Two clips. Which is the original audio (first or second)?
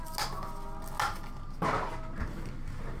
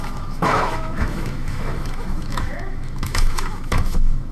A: first